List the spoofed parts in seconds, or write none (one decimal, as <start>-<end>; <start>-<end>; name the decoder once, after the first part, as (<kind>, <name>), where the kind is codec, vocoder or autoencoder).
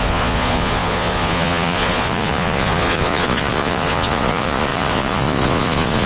0.0-6.1 (vocoder, Vocos)